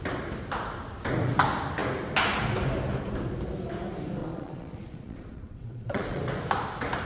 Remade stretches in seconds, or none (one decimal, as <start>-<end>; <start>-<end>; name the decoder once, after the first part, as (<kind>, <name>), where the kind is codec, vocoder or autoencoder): 4.2-6.2 (vocoder, Vocos)